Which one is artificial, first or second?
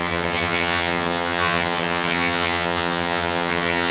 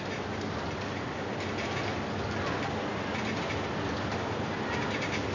first